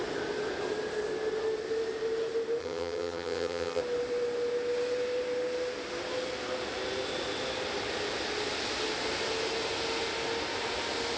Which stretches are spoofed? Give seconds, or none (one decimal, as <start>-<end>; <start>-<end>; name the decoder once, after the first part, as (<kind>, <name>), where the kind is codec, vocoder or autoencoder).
2.6-3.8 (vocoder, HiFi-GAN)